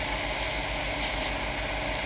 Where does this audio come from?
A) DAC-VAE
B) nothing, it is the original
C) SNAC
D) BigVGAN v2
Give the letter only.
B